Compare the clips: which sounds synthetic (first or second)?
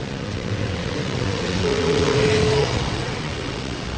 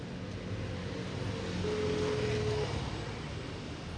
first